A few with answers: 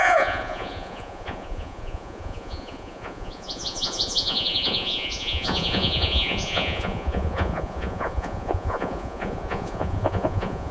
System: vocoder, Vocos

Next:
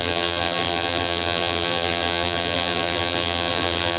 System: vocoder, BigVGAN v2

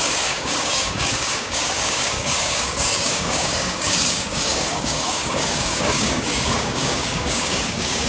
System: codec, DAC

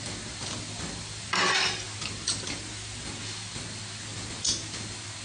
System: none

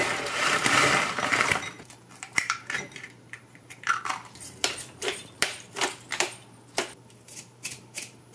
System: vocoder, BigVGAN v2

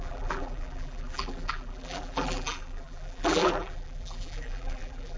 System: vocoder, BigVGAN v2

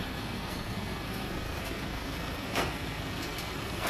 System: codec, SNAC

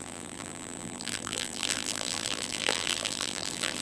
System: vocoder, BigVGAN v2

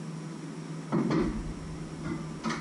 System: none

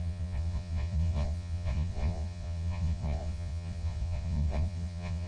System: vocoder, Vocos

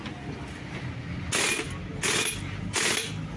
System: none